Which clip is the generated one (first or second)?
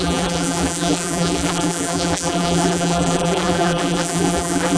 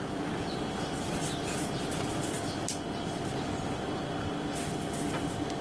first